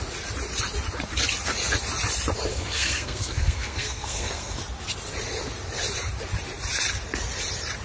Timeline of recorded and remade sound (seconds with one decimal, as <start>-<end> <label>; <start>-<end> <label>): 0.0-2.5 recorded; 2.5-4.6 remade; 4.6-7.8 recorded